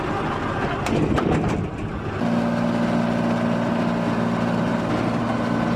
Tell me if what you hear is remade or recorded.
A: recorded